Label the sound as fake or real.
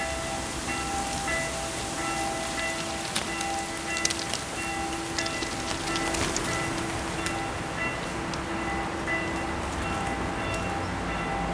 real